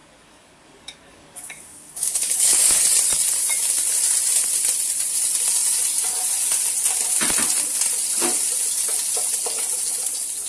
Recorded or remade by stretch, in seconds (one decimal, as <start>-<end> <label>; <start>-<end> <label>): 0.0-2.8 remade; 2.8-10.5 recorded